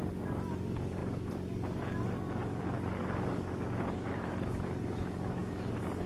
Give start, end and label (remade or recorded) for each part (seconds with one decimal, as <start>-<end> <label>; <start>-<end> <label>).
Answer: 0.0-6.1 remade